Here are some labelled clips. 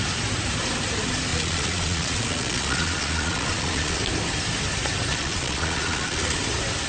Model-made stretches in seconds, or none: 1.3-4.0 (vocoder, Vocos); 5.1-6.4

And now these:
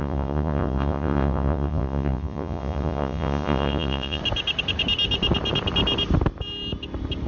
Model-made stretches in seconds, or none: 0.0-4.2 (vocoder, Vocos)